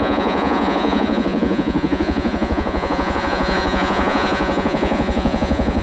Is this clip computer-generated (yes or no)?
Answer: yes